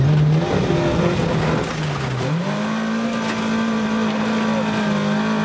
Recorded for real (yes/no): yes